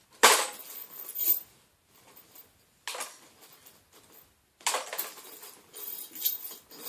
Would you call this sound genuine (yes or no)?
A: yes